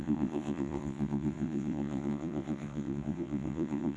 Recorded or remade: remade